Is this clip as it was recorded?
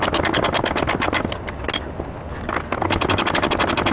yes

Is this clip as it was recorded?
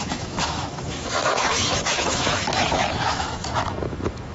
no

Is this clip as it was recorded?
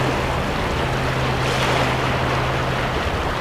yes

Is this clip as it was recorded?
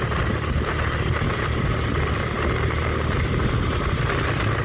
yes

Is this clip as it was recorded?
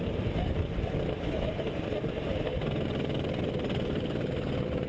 yes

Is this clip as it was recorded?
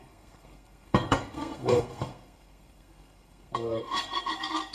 no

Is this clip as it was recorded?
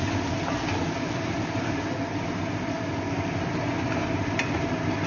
yes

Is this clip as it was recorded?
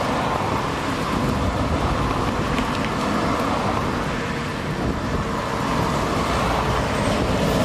yes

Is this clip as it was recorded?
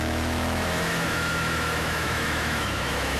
no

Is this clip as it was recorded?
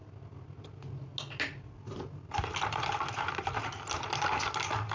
yes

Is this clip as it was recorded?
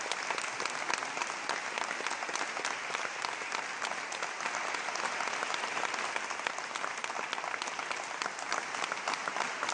yes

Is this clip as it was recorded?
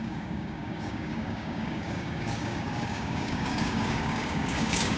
no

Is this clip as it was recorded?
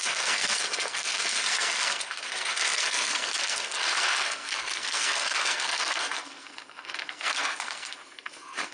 no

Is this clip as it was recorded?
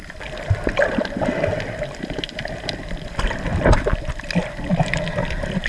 yes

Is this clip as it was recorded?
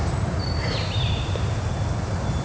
yes